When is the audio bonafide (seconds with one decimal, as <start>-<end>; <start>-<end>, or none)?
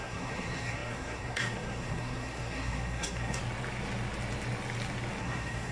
3.4-5.2